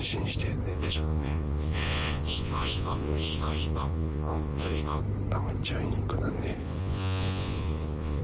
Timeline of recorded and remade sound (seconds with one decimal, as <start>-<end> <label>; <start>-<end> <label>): 0.0-0.7 recorded; 0.7-5.0 remade; 5.0-6.6 recorded; 6.6-8.2 remade